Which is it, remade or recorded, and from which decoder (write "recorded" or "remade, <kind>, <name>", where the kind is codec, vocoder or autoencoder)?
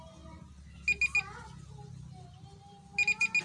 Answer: recorded